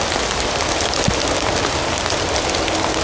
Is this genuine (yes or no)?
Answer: yes